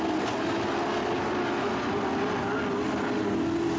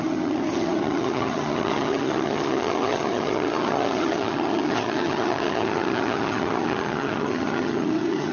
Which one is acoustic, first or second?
first